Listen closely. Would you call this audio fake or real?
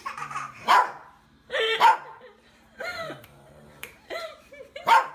fake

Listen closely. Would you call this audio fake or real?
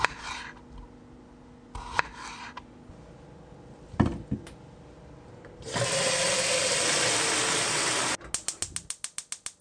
real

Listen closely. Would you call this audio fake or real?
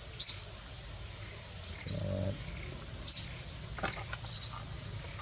real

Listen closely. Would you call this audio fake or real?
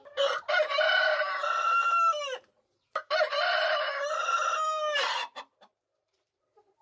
fake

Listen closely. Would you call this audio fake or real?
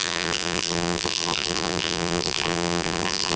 fake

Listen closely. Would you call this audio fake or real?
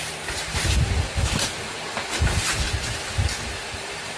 fake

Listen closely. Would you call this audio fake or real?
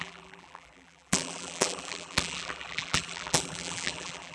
fake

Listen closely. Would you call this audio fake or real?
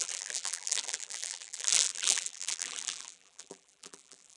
fake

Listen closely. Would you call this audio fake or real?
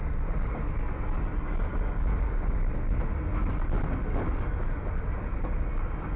real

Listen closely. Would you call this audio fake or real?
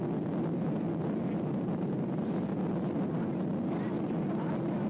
real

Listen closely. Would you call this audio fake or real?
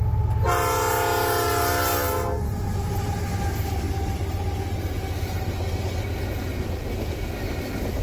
real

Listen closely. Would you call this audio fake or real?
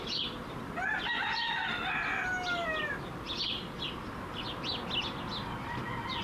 real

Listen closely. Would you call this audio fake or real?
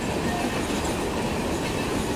fake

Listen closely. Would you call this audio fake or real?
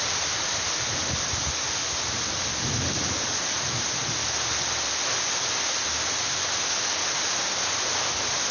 real